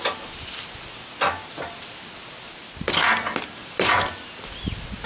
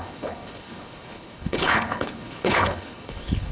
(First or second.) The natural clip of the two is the first